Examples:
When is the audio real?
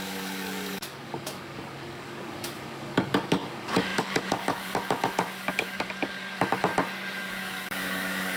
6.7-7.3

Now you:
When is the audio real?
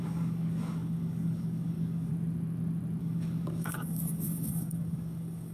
2.1-3.0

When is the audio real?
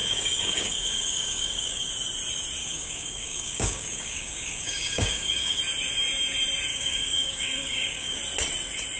1.9-2.6; 5.6-6.7; 8.2-9.0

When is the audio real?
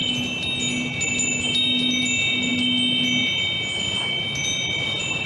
0.0-5.3